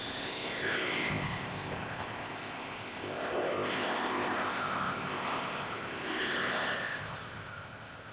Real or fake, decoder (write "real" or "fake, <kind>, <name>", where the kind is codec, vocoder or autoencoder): fake, codec, ZipCodec